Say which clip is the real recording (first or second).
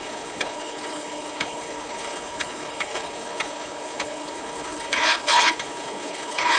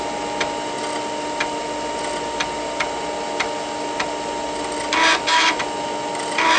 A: second